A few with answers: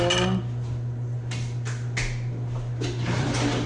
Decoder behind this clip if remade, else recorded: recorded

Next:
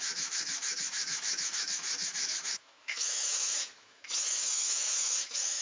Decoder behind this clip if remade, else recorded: remade, autoencoder, DAC-VAE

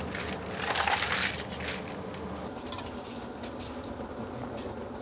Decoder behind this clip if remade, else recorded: recorded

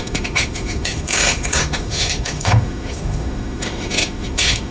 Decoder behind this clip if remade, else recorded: remade, autoencoder, DAC-VAE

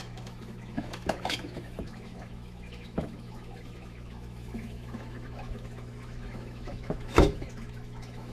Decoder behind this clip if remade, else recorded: remade, autoencoder, DAC-VAE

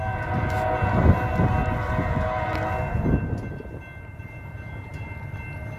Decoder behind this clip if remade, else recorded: recorded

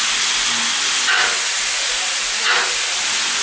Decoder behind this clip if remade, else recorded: recorded